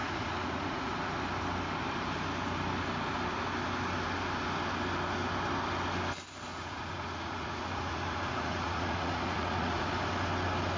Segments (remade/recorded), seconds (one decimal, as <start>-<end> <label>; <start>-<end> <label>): 0.0-0.9 remade; 0.9-6.5 recorded; 6.5-9.9 remade; 9.9-10.8 recorded